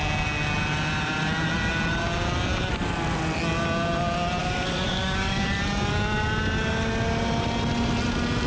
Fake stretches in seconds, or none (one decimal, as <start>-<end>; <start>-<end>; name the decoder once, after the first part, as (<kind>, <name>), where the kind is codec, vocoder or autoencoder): 4.4-5.4 (codec, DAC)